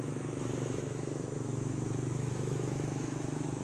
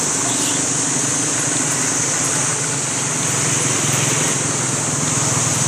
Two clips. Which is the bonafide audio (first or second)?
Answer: second